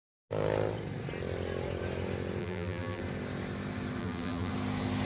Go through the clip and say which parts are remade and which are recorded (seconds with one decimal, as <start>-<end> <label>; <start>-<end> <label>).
0.0-2.4 recorded; 2.4-3.0 remade; 3.0-4.0 recorded; 4.0-4.5 remade; 4.5-5.0 recorded